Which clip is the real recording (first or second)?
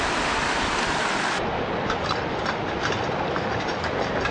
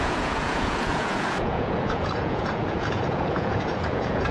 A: first